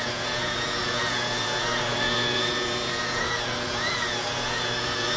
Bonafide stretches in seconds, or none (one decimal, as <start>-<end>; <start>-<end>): none